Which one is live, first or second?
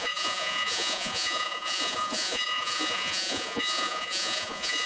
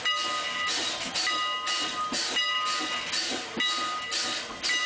second